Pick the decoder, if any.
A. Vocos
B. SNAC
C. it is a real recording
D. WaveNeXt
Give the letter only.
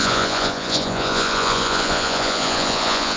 A